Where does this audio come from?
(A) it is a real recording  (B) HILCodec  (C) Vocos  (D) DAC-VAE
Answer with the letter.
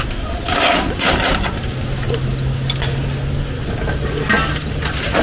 A